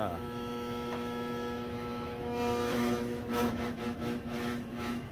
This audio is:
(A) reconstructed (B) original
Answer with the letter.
A